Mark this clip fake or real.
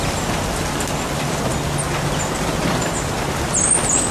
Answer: real